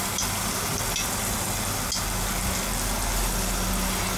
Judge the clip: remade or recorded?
recorded